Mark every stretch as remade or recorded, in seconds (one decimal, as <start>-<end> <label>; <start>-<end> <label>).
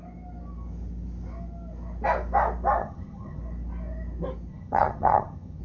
0.0-2.8 recorded; 2.8-3.4 remade; 3.4-4.5 recorded; 4.5-5.6 remade